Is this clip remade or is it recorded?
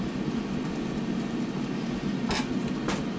recorded